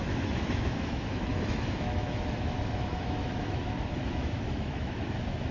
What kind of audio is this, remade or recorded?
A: remade